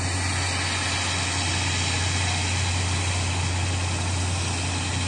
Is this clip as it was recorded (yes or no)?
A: yes